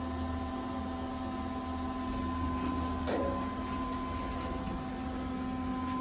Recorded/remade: recorded